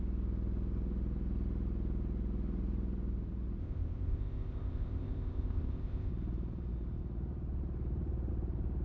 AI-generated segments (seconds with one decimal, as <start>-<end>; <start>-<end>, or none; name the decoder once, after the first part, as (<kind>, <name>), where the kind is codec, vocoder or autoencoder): 3.6-6.1 (codec, ZipCodec)